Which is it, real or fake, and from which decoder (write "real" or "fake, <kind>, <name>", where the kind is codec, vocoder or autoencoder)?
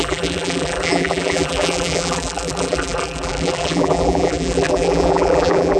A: fake, vocoder, BigVGAN v2